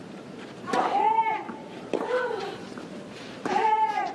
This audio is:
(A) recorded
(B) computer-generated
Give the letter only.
B